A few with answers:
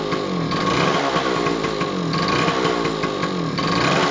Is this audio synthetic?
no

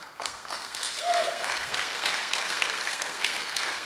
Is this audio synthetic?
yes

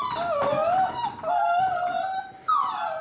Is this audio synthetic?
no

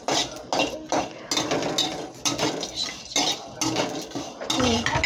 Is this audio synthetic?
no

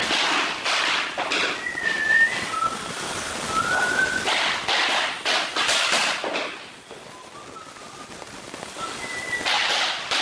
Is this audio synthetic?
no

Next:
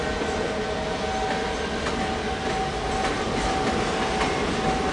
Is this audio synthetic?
no